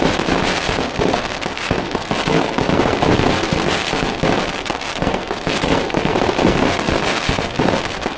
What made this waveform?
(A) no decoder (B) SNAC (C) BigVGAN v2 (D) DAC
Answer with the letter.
B